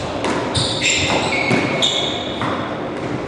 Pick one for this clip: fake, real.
real